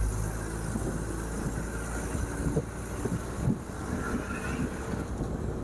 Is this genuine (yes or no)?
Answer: yes